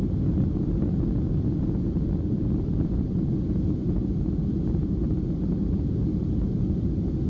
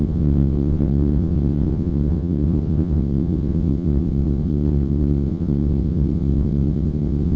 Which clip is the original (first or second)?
first